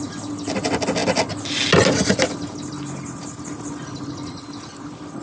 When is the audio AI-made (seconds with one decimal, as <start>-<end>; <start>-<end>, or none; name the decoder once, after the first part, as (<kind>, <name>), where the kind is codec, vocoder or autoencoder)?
none